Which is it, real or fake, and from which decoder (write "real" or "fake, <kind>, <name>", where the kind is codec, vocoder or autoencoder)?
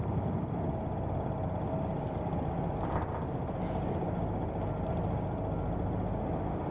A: real